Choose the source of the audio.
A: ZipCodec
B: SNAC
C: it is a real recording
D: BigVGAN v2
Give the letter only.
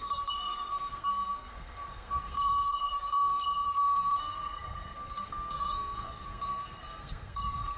B